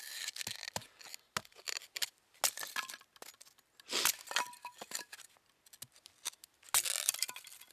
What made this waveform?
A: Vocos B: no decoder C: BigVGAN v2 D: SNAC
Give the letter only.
B